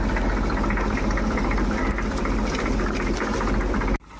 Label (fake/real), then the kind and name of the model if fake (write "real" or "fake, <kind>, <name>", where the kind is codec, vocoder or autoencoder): real